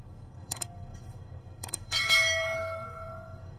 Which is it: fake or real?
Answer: fake